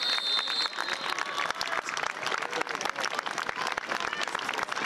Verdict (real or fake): real